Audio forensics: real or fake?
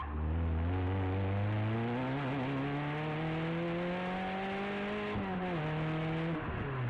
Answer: real